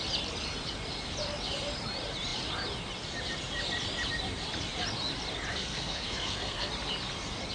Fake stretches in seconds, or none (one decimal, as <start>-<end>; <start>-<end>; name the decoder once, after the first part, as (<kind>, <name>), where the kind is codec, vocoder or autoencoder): 5.5-6.7 (codec, SNAC)